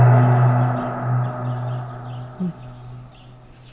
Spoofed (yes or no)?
no